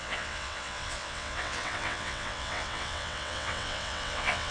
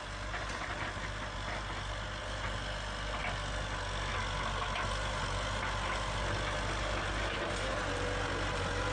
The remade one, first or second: first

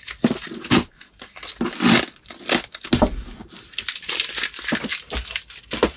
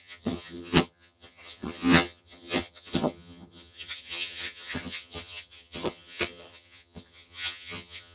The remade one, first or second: second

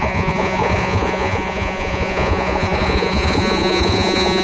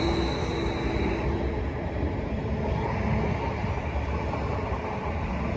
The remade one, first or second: first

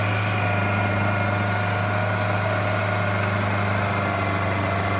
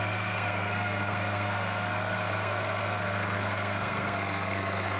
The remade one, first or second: second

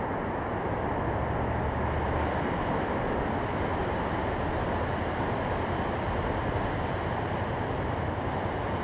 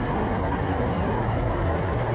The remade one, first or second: second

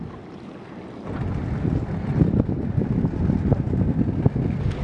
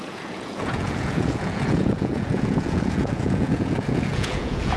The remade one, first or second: second